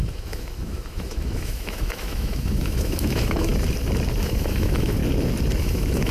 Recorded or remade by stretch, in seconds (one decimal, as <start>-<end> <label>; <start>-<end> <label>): 0.0-3.5 remade; 3.5-4.2 recorded; 4.2-5.0 remade; 5.0-5.6 recorded; 5.6-6.1 remade